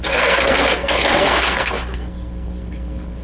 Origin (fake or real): fake